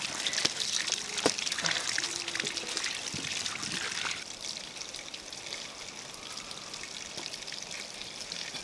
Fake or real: real